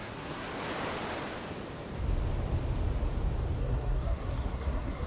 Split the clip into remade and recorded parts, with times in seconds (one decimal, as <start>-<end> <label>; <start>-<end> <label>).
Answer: 0.0-0.5 remade; 0.5-3.6 recorded; 3.6-5.1 remade